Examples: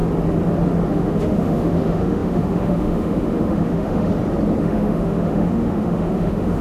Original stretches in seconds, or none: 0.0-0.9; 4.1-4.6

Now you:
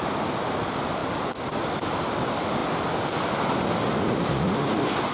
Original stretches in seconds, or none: 0.0-5.1

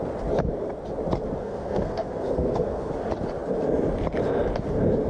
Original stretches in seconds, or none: 0.0-1.4; 2.9-5.1